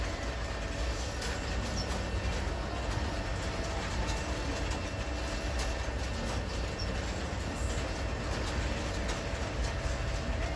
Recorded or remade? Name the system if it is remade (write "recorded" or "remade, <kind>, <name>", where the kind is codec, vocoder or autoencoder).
recorded